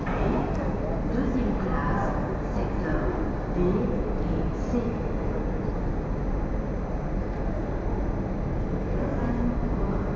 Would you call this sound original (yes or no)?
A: yes